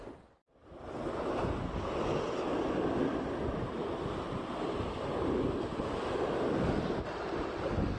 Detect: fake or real real